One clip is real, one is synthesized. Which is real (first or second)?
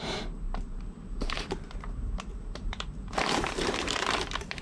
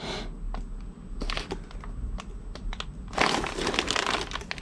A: second